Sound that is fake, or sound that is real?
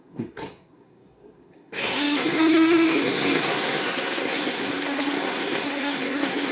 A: fake